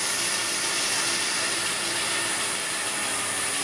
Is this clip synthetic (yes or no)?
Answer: no